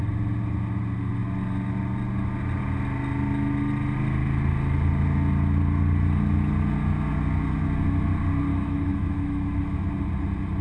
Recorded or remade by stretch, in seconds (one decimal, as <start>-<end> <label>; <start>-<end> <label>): 0.0-8.5 recorded; 8.5-9.9 remade; 9.9-10.6 recorded